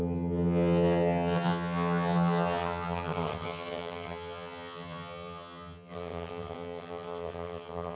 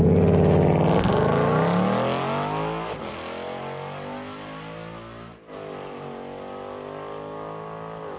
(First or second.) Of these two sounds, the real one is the second